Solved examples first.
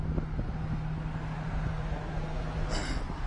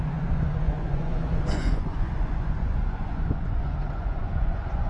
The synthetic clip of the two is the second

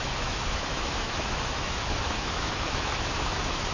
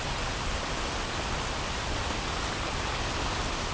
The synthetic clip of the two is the first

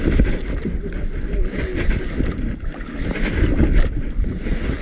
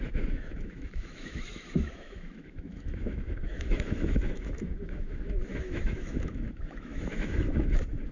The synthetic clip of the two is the second